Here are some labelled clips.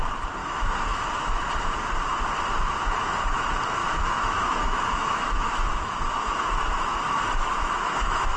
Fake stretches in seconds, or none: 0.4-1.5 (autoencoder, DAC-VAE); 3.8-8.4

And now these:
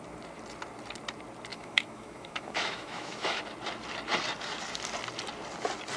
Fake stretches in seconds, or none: 1.5-3.4 (autoencoder, DAC-VAE)

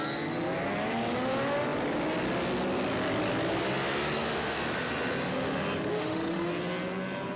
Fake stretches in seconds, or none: 5.9-6.5 (autoencoder, DAC-VAE)

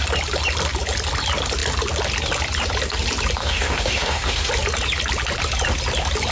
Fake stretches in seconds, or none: 3.4-4.5 (autoencoder, DAC-VAE)

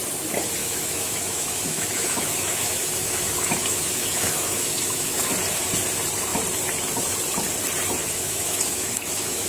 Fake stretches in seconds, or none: 0.6-5.3 (autoencoder, DAC-VAE); 8.0-9.5

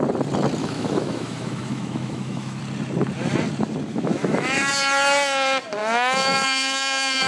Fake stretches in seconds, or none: 0.6-2.6 (autoencoder, DAC-VAE); 3.9-4.7; 5.8-7.3

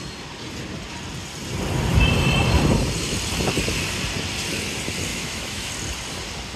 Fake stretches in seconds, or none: 5.1-5.7 (autoencoder, DAC-VAE)